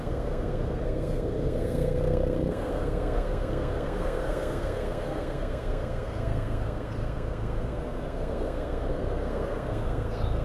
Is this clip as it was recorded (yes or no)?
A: no